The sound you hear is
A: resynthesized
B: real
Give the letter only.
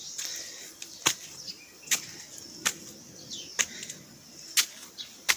B